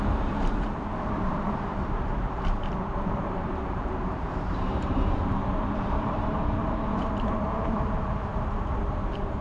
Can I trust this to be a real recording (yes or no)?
no